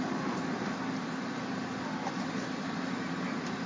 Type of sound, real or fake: real